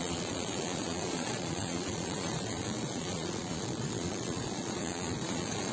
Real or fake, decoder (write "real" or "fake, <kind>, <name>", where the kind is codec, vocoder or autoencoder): fake, vocoder, Vocos